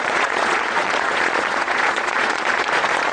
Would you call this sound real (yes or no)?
no